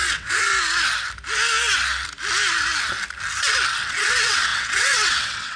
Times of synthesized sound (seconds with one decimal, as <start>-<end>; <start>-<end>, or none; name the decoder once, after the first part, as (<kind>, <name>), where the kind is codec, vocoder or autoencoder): 0.0-0.5 (vocoder, WaveNeXt); 3.9-5.6